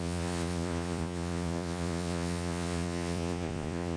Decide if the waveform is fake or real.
fake